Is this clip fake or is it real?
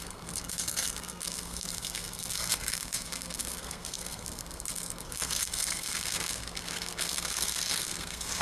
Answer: fake